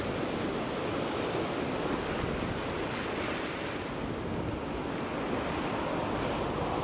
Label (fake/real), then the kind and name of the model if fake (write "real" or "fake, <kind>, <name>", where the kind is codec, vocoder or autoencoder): real